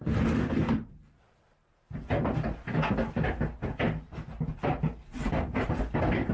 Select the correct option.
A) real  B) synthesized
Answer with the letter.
A